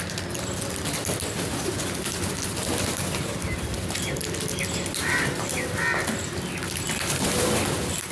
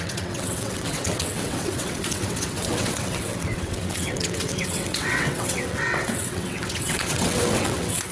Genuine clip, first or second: first